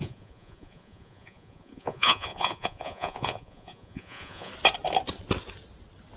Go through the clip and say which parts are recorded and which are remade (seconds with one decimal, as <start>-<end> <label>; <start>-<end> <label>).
0.0-4.5 remade; 4.5-6.2 recorded